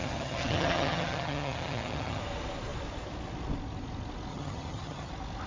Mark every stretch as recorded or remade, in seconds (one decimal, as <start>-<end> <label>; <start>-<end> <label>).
0.0-2.2 remade; 2.2-4.3 recorded; 4.3-5.1 remade; 5.1-5.5 recorded